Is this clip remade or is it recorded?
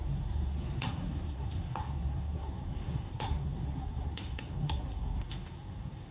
remade